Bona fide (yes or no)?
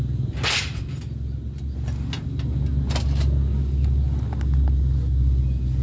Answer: yes